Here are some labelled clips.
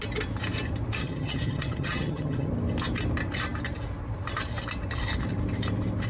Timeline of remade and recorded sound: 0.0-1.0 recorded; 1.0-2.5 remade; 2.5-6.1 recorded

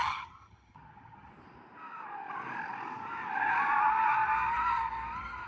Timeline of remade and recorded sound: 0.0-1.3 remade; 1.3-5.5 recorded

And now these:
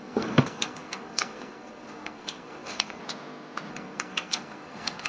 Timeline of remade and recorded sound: 0.0-3.0 remade; 3.0-3.7 recorded; 3.7-5.1 remade

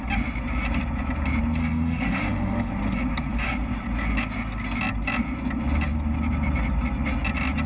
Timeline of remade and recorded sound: 0.0-1.6 recorded; 1.6-2.7 remade; 2.7-7.7 recorded